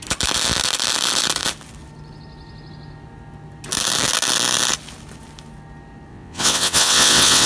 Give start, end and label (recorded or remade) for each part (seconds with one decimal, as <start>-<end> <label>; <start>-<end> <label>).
0.0-6.1 recorded; 6.1-7.5 remade